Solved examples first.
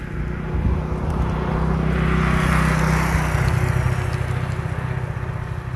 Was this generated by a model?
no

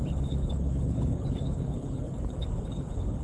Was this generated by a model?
yes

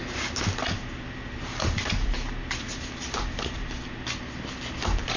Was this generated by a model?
no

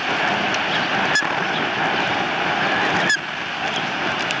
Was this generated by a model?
no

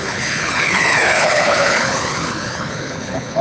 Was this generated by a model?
yes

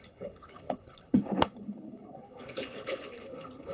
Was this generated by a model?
yes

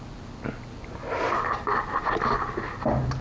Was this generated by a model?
no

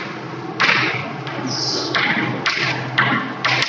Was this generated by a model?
no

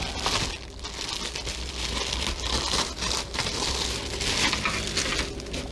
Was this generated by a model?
no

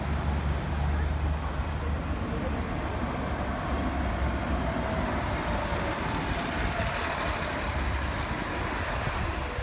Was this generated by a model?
no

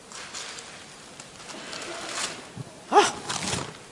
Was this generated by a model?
no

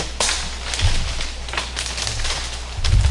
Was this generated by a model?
no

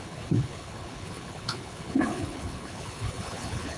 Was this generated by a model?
yes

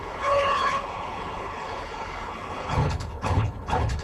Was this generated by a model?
yes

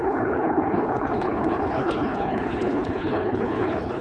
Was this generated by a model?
yes